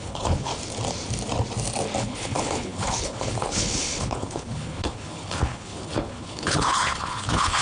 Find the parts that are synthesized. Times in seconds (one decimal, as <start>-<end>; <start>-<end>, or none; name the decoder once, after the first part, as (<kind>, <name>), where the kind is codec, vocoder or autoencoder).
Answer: 0.0-0.5 (codec, HILCodec); 2.0-7.6